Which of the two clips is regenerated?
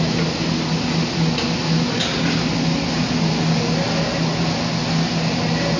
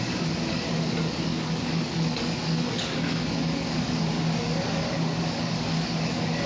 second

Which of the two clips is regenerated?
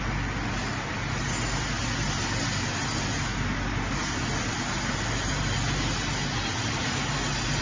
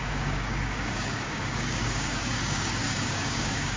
second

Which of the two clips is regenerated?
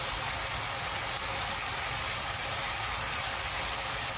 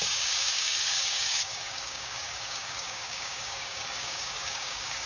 second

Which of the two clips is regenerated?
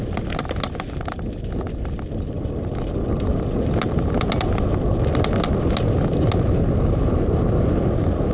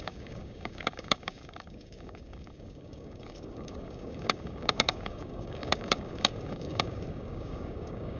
second